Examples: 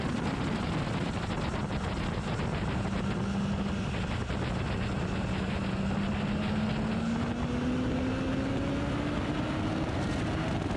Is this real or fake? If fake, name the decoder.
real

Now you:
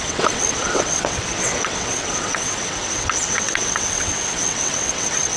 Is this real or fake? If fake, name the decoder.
fake, vocoder, WaveNeXt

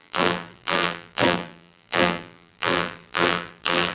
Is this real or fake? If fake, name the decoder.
fake, vocoder, BigVGAN v2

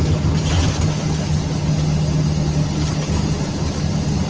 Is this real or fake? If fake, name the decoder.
real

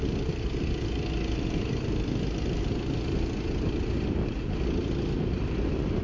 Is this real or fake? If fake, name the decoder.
real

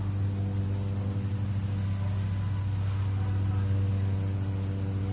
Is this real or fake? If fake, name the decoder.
real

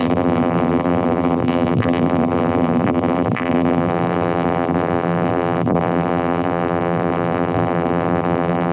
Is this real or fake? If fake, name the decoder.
fake, vocoder, BigVGAN v2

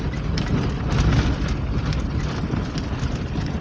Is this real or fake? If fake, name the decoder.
real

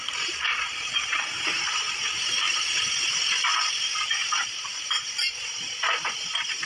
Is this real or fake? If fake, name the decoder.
fake, vocoder, BigVGAN v2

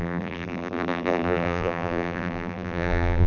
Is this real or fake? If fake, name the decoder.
fake, vocoder, BigVGAN v2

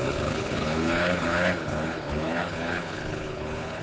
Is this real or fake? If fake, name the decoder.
fake, codec, HILCodec